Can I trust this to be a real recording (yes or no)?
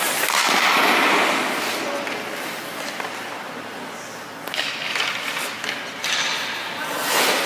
yes